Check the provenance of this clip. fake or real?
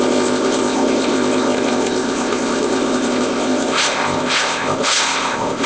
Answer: fake